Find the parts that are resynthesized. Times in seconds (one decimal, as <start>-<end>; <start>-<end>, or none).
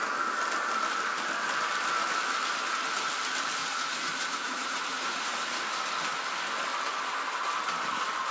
3.6-5.6